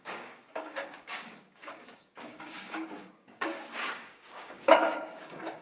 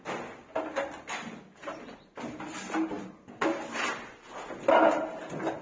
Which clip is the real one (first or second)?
second